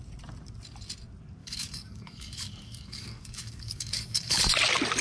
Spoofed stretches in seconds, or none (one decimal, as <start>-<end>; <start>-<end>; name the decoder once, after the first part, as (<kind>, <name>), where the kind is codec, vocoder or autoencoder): 1.4-4.4 (codec, DAC)